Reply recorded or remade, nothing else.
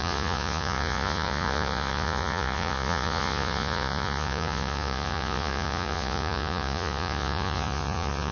remade